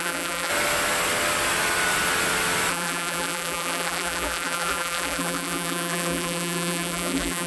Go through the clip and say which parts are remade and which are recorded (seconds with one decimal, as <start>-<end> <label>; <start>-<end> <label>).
0.0-0.5 remade; 0.5-2.7 recorded; 2.7-7.5 remade